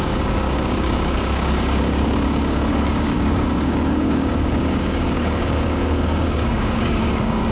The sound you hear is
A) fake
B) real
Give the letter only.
A